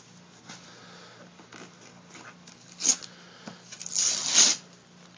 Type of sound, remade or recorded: recorded